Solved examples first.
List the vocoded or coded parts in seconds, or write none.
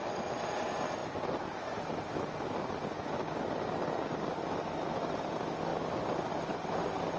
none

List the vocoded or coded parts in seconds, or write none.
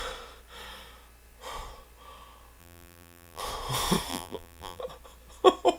2.6-3.4 (vocoder, BigVGAN v2); 4.1-4.8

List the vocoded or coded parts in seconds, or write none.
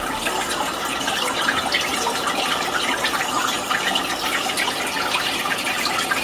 1.9-3.2 (vocoder, BigVGAN v2); 4.3-4.8